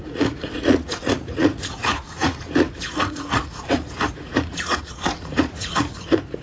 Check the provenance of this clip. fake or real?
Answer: fake